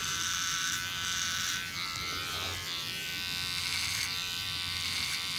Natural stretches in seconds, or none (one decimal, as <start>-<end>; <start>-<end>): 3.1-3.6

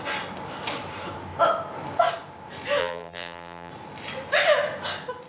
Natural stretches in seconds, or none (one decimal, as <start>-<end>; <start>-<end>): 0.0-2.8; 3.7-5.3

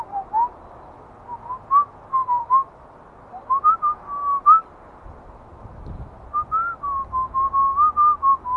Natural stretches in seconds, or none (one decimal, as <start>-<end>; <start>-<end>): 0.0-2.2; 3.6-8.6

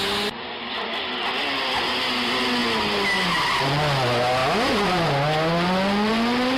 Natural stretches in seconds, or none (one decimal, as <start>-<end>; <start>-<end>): 0.0-6.6

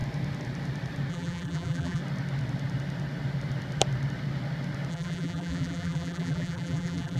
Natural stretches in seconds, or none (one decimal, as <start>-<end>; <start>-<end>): 0.0-1.1; 2.0-4.9